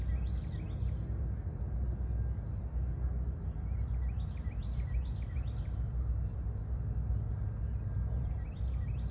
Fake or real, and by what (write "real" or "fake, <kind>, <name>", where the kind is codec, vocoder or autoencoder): real